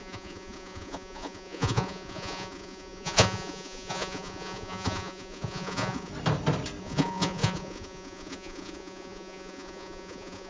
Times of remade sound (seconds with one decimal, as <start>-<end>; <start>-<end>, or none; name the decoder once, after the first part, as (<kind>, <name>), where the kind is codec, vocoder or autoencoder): 0.0-6.1 (vocoder, Vocos); 6.8-10.5